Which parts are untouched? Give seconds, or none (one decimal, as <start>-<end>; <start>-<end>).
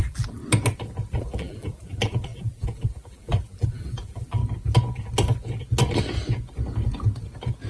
0.4-1.1; 4.4-7.7